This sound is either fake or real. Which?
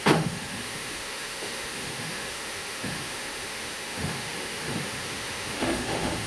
fake